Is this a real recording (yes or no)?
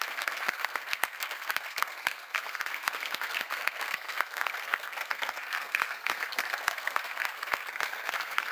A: no